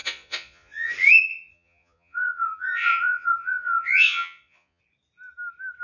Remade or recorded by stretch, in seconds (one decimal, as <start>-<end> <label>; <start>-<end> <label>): 0.0-0.9 remade; 0.9-1.3 recorded; 1.3-4.8 remade; 4.8-5.8 recorded